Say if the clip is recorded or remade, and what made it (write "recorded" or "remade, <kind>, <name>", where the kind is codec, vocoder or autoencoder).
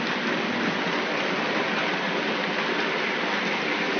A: remade, vocoder, BigVGAN v2